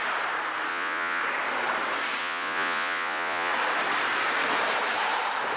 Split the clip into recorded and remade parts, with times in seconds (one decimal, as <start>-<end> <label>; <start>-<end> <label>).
0.0-0.7 recorded; 0.7-1.2 remade; 1.2-2.2 recorded; 2.2-3.5 remade; 3.5-5.6 recorded